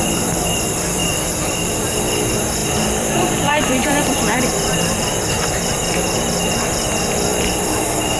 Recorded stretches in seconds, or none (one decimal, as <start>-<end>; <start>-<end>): 0.0-2.6; 5.3-7.3